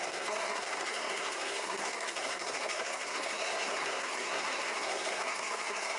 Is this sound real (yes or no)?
no